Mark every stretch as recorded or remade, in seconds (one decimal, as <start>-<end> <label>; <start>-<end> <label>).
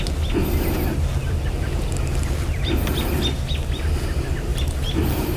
0.0-4.5 recorded; 4.5-5.4 remade